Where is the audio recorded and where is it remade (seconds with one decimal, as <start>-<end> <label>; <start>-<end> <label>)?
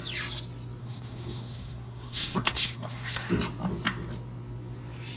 0.0-0.8 recorded; 0.8-3.3 remade; 3.3-5.2 recorded